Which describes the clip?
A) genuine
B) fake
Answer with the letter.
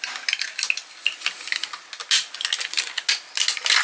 A